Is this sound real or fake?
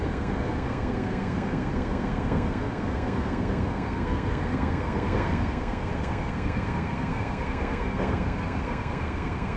fake